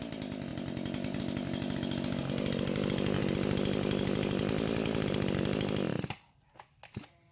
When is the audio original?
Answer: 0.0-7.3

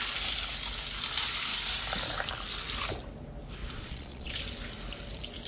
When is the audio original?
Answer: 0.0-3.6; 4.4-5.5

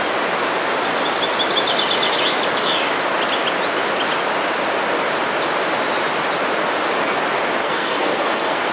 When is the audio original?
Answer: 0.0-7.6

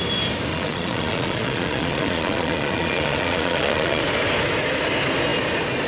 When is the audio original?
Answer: 0.0-0.5; 4.0-5.9

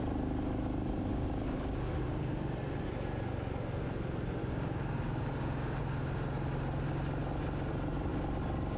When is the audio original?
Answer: 0.0-1.1; 1.9-4.4; 5.8-8.8

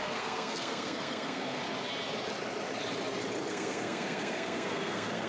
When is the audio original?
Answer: 1.6-3.5

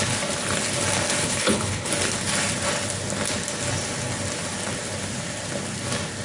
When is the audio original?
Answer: 0.0-1.2; 1.9-6.2

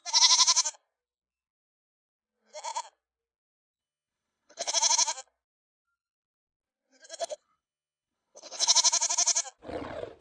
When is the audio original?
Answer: 0.0-3.8; 4.7-7.2; 8.7-10.2